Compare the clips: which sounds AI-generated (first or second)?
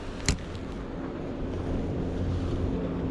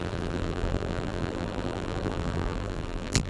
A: second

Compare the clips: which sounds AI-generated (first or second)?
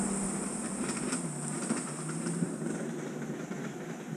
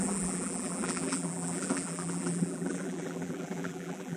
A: second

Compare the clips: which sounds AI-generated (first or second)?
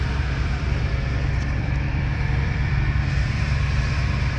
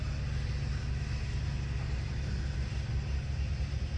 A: first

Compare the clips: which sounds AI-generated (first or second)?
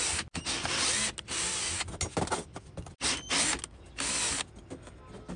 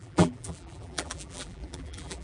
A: second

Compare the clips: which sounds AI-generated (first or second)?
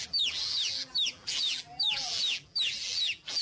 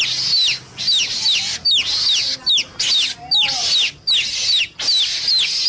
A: first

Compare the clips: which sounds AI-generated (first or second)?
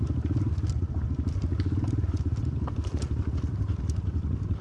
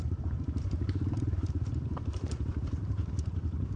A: second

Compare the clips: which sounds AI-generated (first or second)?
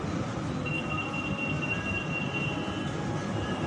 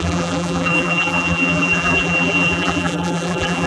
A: second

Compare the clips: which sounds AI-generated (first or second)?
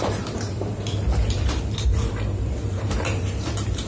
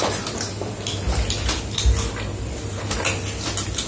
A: first